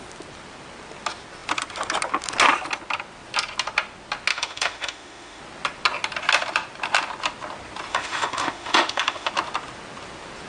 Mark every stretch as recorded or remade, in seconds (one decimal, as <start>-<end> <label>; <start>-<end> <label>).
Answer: 0.0-4.3 recorded; 4.3-5.4 remade; 5.4-7.9 recorded; 7.9-9.3 remade; 9.3-10.5 recorded